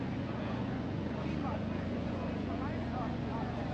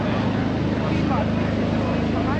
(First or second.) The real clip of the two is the second